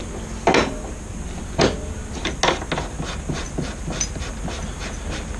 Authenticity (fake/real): real